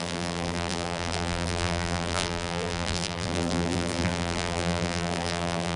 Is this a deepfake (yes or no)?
yes